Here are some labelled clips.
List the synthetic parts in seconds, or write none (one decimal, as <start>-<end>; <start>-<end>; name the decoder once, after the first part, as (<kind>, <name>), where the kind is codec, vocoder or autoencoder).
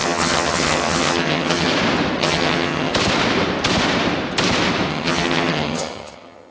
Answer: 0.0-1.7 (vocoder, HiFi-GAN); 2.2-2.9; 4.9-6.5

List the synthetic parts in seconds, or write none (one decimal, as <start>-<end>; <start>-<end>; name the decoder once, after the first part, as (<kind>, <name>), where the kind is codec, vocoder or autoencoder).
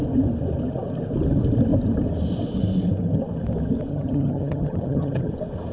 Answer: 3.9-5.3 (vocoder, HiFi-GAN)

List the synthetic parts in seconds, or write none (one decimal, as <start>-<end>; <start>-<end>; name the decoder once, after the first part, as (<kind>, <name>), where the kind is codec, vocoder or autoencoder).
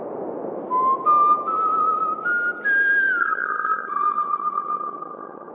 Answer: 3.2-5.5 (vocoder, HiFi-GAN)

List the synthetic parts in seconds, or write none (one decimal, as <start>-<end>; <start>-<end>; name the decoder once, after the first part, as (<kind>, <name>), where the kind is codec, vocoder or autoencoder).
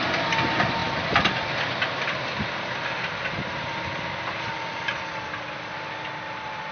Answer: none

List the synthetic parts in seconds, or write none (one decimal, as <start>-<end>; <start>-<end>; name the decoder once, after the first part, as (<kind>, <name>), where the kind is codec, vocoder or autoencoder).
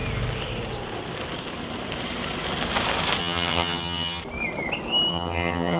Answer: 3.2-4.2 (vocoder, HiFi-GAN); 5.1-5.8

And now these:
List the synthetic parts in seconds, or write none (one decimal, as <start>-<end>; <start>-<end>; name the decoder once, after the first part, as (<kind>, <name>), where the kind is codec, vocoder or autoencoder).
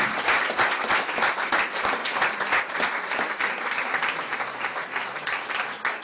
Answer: none